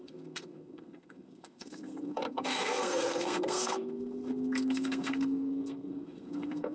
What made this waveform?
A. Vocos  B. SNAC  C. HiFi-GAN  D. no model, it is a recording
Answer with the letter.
B